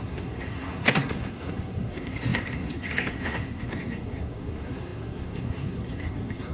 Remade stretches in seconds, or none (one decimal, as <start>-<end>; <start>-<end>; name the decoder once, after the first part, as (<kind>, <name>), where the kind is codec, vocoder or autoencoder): 0.0-6.5 (codec, SNAC)